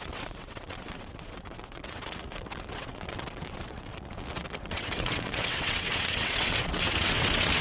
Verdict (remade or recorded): remade